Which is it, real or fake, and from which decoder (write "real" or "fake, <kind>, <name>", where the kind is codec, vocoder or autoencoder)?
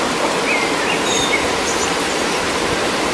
fake, vocoder, BigVGAN v2